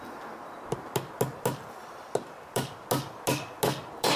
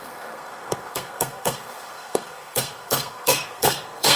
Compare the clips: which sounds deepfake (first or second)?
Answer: second